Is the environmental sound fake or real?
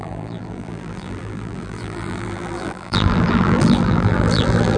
fake